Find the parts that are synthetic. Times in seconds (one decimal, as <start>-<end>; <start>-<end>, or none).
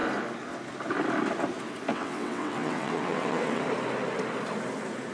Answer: 1.9-3.6